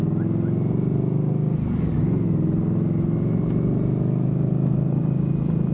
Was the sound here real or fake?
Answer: real